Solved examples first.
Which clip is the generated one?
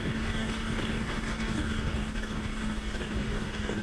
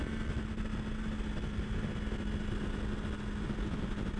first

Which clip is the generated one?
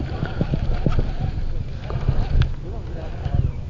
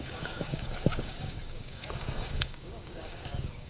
second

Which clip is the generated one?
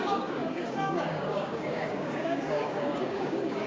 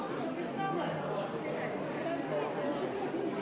first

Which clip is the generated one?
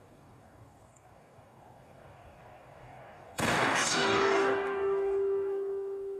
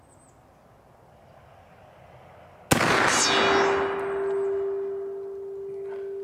first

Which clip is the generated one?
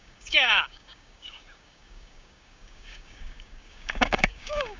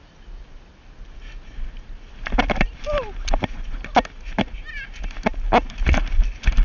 first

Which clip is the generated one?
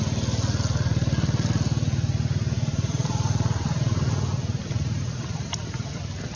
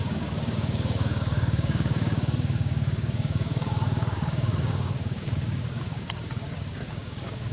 second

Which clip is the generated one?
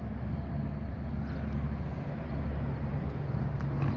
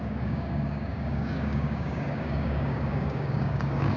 second